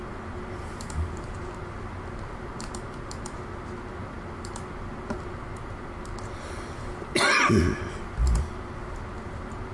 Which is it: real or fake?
real